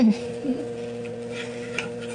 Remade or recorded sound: remade